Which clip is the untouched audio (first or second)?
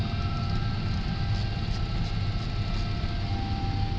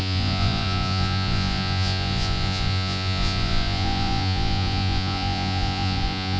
first